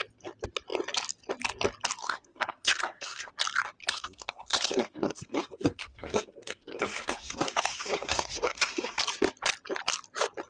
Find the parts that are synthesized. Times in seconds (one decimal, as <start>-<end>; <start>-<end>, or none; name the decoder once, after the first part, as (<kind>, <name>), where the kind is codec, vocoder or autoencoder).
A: 2.0-3.3 (codec, SNAC); 3.8-9.0